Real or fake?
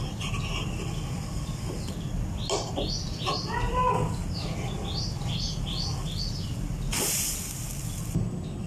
real